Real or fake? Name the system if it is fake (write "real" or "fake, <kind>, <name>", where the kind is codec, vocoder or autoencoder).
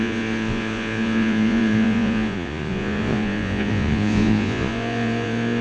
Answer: fake, vocoder, Vocos